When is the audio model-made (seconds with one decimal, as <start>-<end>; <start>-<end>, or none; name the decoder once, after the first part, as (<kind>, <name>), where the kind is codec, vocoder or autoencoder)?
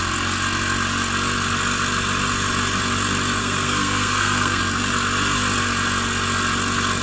3.4-4.6 (codec, SNAC)